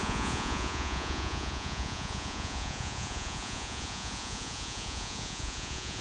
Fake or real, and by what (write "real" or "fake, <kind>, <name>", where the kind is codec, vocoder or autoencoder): fake, vocoder, Vocos